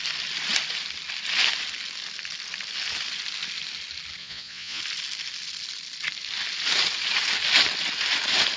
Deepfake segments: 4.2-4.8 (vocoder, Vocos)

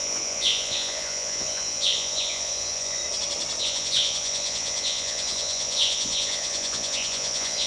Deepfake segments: 0.0-3.0 (vocoder, Vocos); 3.6-7.7

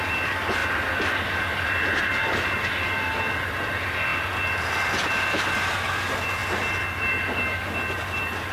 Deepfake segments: none

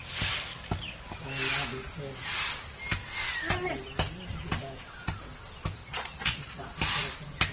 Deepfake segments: 5.8-6.7 (vocoder, Vocos)

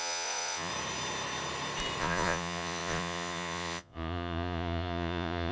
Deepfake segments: 0.0-0.7 (vocoder, Vocos); 2.0-5.5